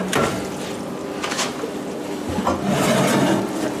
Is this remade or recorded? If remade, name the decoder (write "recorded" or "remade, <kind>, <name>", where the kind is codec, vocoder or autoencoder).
recorded